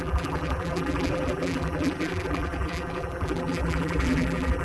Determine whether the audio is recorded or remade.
remade